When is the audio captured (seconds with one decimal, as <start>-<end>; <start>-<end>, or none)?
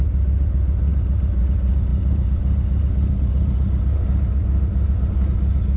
0.0-5.8